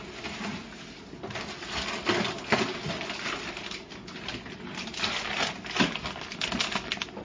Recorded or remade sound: recorded